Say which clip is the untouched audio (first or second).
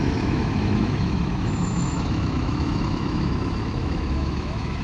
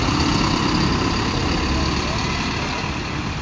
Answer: second